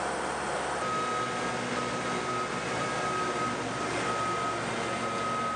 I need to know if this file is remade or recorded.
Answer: recorded